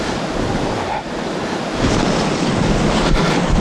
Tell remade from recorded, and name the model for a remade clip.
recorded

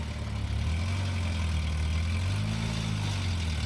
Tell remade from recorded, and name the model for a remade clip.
recorded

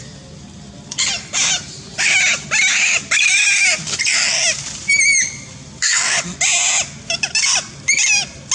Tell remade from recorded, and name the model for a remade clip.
recorded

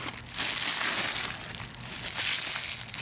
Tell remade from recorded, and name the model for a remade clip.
recorded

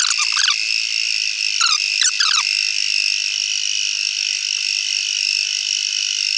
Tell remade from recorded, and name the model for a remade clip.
recorded